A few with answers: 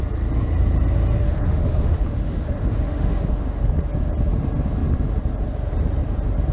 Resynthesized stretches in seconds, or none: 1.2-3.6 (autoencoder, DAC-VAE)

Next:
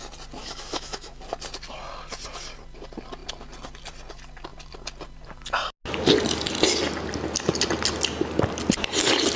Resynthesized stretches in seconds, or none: 0.4-1.2 (autoencoder, DAC-VAE)

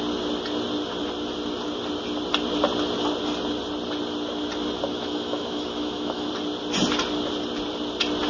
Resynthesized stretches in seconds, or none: 4.9-6.3 (autoencoder, DAC-VAE)

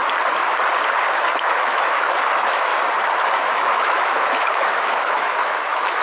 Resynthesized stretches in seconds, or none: 1.2-2.7 (autoencoder, DAC-VAE); 3.4-6.0

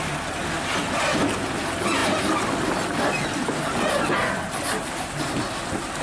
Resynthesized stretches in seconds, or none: none

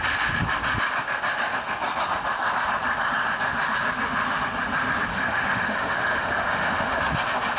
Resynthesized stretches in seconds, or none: 5.1-7.0 (autoencoder, DAC-VAE)

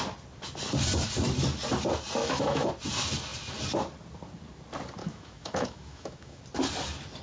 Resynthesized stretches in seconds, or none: 2.2-2.7 (autoencoder, DAC-VAE); 5.0-6.4

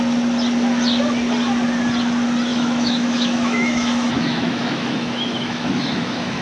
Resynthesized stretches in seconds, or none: 2.5-6.4 (autoencoder, DAC-VAE)